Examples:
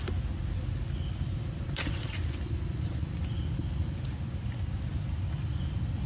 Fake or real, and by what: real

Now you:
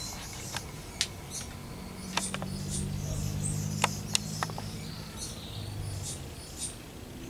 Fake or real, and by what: real